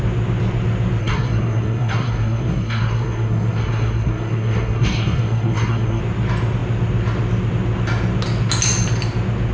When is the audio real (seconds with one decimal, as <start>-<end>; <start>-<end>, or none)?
0.0-1.0; 6.0-9.5